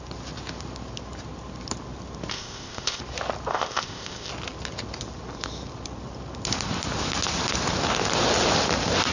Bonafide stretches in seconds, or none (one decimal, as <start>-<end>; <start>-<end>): 0.0-2.3; 3.0-3.5; 4.3-9.1